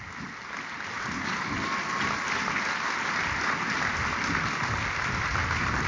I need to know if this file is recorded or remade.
recorded